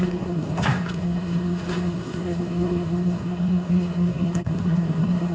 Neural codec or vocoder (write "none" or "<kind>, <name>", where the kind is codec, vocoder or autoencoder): codec, SNAC